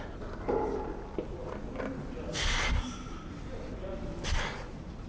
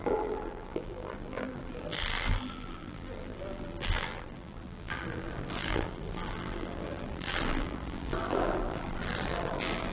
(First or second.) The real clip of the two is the first